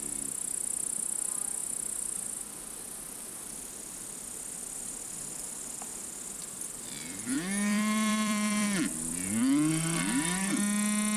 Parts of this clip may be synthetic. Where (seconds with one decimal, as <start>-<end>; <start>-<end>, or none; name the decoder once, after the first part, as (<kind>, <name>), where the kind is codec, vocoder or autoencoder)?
6.4-9.7 (vocoder, BigVGAN v2)